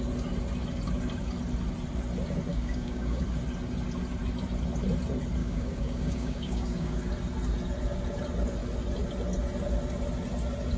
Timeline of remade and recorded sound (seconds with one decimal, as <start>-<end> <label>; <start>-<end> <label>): 0.0-2.5 recorded; 2.5-3.2 remade; 3.2-5.4 recorded; 5.4-7.0 remade; 7.0-10.8 recorded